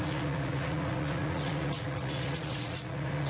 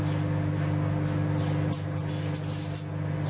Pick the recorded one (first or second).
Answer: second